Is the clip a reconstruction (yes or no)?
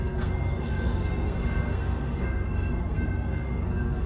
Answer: yes